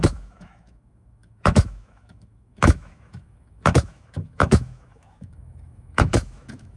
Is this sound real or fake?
fake